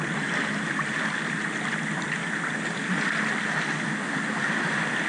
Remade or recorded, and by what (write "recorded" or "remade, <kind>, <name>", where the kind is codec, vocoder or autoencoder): recorded